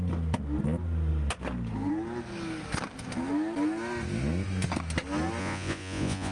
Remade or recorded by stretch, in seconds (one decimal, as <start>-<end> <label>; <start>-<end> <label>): 0.0-5.4 recorded; 5.4-6.3 remade